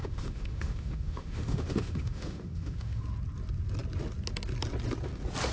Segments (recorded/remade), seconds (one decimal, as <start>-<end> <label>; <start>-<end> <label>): 0.0-3.0 remade; 3.0-5.5 recorded